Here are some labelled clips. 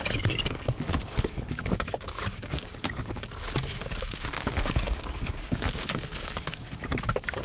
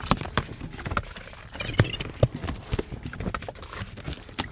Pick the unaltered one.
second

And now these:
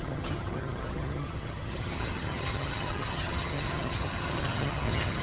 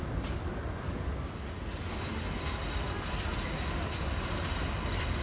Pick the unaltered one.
second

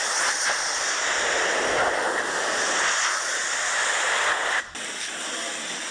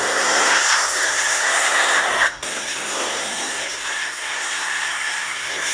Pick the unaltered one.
first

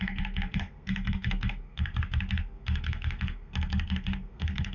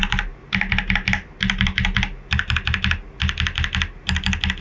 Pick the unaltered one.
second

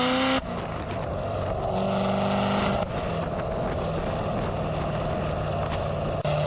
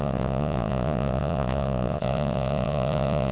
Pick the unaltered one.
first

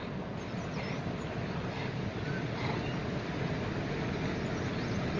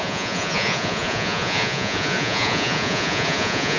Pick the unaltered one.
first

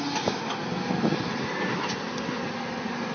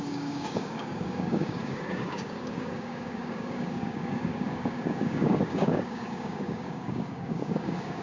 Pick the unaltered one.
first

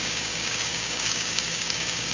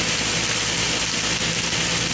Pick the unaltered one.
second